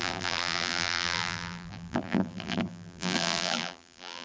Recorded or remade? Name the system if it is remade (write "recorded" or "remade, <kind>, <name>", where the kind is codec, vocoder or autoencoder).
remade, vocoder, BigVGAN v2